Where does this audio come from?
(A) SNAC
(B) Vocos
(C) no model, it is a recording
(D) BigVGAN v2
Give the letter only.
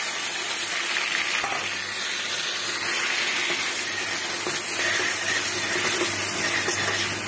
C